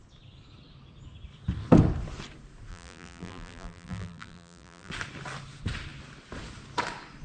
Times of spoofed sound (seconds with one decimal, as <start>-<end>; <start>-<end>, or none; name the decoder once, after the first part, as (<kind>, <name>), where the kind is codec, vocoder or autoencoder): 2.7-4.9 (vocoder, BigVGAN v2)